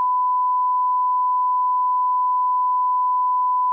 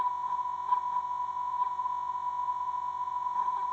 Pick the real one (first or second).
first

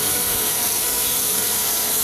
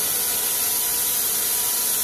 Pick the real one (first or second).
second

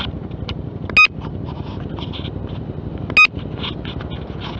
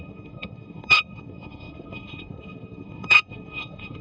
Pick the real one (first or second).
first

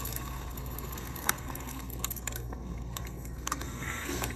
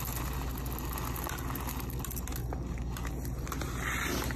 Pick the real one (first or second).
second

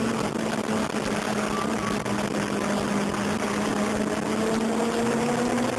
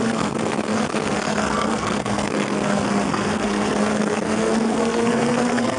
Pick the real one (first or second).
first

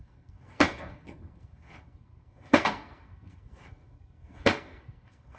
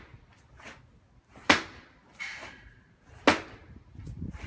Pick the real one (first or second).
second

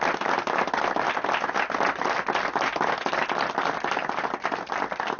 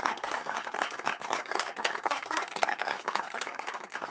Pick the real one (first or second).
first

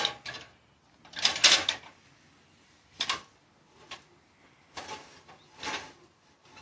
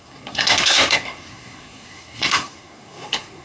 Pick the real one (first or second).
first